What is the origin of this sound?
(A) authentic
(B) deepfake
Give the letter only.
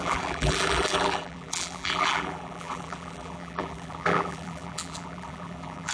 B